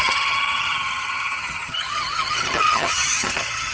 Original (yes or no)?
no